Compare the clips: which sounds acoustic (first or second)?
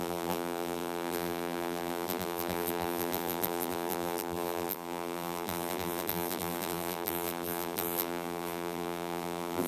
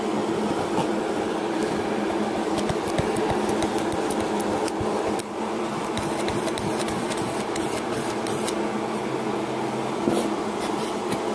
second